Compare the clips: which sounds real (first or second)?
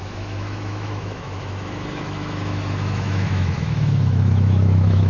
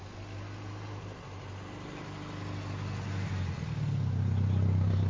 second